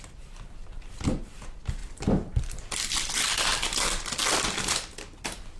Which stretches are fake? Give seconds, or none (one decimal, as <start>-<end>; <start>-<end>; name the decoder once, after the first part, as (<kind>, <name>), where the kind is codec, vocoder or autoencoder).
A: 1.8-2.4 (vocoder, BigVGAN v2)